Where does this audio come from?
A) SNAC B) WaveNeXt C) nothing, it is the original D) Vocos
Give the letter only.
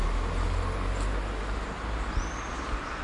C